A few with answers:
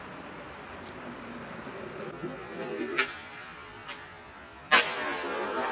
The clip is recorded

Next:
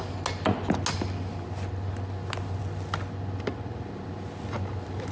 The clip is recorded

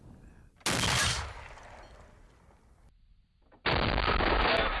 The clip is recorded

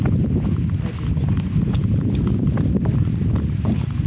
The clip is recorded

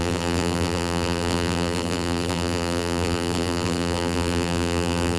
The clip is remade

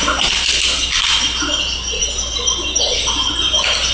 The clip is recorded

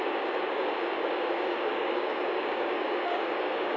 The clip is remade